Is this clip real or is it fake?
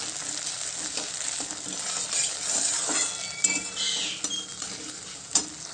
real